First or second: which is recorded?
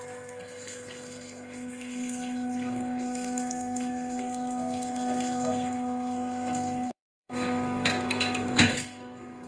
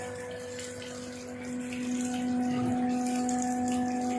second